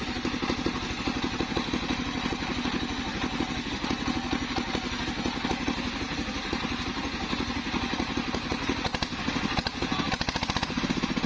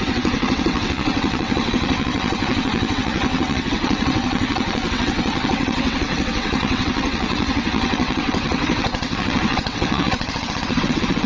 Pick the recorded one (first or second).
first